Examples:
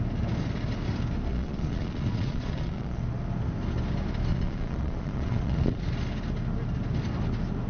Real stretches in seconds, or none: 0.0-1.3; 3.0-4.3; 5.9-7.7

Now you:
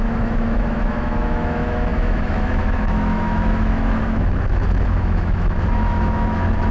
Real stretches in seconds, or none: none

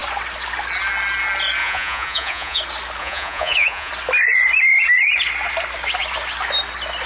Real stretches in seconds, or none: 0.0-1.6; 2.6-3.0; 3.9-7.1